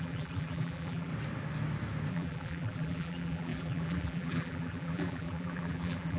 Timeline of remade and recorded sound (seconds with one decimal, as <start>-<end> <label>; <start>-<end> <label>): 0.0-1.1 remade; 1.1-2.1 recorded; 2.1-6.2 remade